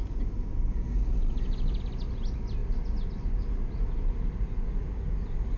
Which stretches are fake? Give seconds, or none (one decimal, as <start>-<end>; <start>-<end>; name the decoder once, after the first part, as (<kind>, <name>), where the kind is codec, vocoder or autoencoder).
none